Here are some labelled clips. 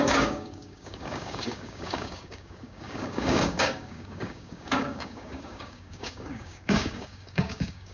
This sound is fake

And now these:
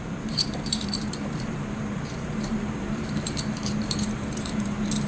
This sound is fake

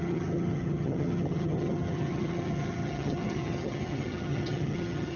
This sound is fake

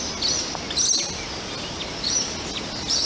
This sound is real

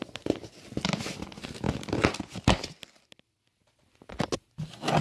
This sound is real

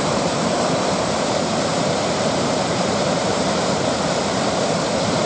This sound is fake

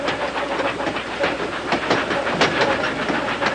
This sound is real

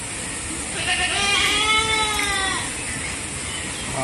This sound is real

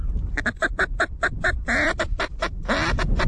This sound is real